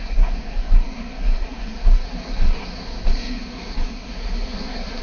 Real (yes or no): no